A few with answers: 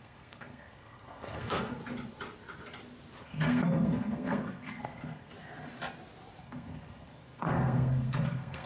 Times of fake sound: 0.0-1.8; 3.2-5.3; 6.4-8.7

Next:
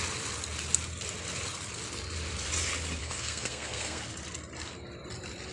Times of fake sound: 3.0-4.0